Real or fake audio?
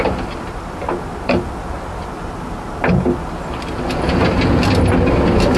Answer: real